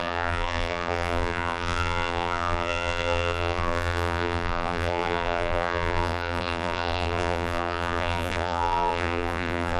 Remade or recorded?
remade